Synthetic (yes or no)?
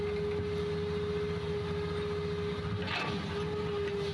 no